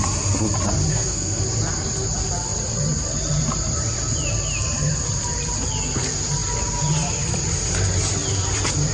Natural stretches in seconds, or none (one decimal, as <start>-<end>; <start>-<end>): 0.0-0.9; 1.4-8.9